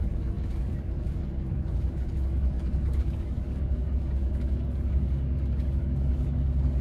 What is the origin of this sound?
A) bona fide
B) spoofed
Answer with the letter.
B